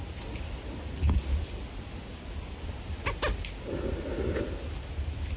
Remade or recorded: recorded